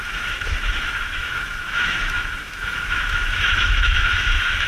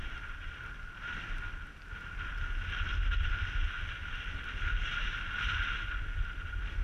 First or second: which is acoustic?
second